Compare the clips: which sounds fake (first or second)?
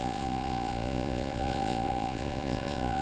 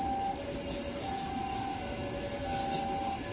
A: first